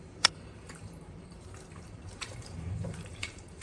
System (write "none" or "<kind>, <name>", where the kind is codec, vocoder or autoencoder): vocoder, BigVGAN v2